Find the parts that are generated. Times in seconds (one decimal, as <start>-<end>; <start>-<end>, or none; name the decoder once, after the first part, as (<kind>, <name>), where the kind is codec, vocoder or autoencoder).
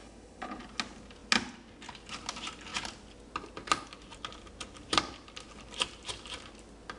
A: 0.0-0.6 (codec, HILCodec)